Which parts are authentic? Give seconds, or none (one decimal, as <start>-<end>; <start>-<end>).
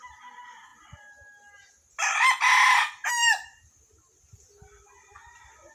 0.0-5.7